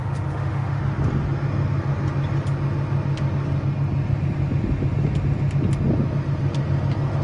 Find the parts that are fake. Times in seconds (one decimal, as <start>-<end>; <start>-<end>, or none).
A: 0.0-0.8